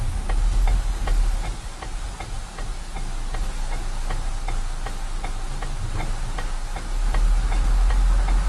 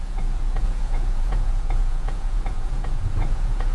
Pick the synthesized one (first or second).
second